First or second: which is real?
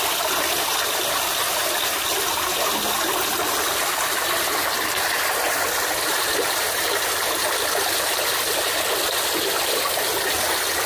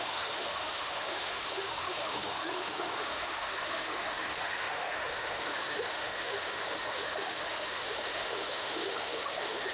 first